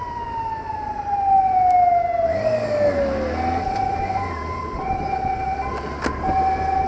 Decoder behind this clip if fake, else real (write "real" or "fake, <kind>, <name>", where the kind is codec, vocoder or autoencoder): real